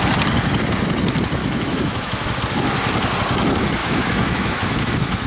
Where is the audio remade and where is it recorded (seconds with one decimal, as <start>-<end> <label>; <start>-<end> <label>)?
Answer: 0.0-1.4 recorded; 1.4-2.4 remade; 2.4-3.8 recorded; 3.8-5.3 remade